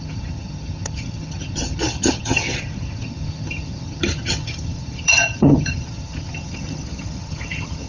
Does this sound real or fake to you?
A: fake